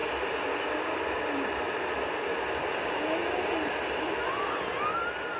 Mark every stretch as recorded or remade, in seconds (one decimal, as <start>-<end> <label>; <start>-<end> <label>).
0.0-1.6 remade; 1.6-5.4 recorded